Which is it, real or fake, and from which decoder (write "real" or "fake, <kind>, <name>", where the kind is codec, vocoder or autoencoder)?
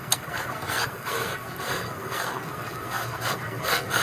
fake, codec, SNAC